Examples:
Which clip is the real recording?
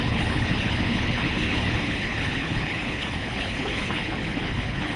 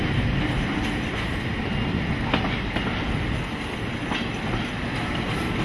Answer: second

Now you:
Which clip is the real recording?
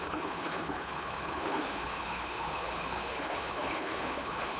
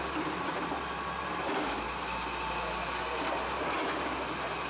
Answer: second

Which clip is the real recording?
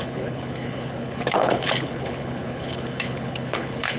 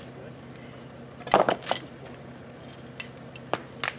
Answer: second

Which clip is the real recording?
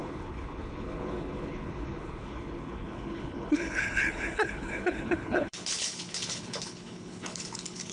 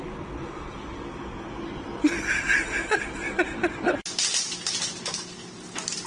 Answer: second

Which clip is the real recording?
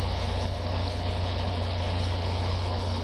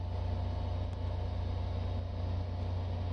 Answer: second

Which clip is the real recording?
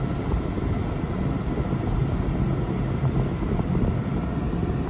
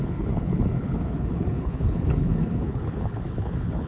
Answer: first